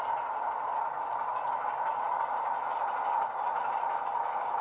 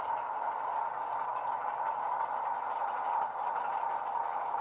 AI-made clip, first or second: first